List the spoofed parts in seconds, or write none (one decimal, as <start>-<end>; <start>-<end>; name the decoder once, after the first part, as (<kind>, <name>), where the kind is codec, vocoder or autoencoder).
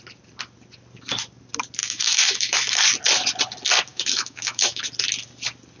1.8-2.8 (autoencoder, DAC-VAE); 3.9-4.8